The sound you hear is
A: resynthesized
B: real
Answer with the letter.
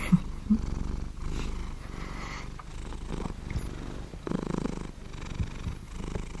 B